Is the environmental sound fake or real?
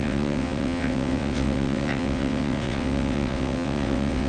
fake